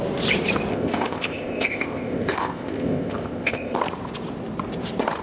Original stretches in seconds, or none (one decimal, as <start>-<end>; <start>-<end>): 0.0-0.7; 3.8-5.2